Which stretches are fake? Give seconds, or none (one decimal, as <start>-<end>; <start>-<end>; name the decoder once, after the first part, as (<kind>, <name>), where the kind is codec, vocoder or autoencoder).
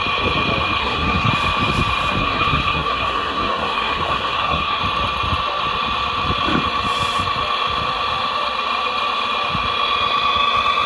0.8-1.3 (codec, SNAC); 2.2-4.8